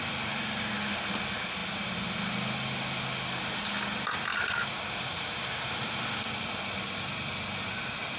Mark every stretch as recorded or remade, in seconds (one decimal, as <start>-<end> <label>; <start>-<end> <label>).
0.0-8.2 recorded